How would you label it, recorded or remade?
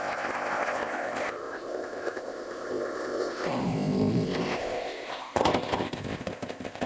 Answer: remade